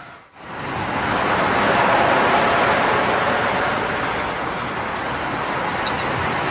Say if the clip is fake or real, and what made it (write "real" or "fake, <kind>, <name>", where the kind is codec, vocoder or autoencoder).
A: real